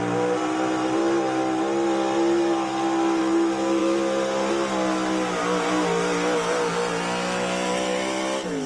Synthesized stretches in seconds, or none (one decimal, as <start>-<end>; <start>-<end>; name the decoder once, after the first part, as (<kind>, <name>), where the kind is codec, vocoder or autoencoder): 3.8-4.5 (vocoder, BigVGAN v2)